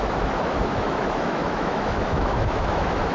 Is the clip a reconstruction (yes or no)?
yes